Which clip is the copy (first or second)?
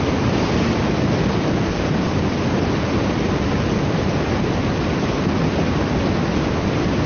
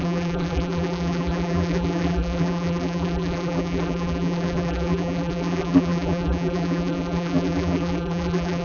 second